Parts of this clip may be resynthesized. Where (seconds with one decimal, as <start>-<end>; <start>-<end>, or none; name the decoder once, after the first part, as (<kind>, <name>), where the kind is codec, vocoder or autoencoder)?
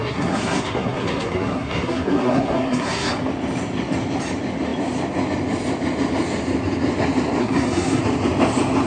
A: 0.0-3.1 (codec, SNAC); 7.4-8.0